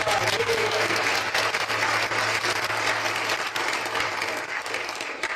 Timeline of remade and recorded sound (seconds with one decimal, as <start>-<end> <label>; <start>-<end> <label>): 0.0-0.4 recorded; 0.4-1.0 remade; 1.0-5.4 recorded